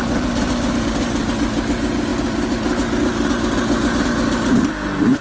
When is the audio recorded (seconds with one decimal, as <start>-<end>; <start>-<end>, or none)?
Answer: 0.0-5.2